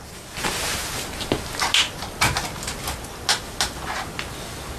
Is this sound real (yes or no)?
yes